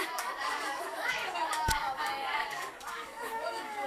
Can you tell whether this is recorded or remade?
remade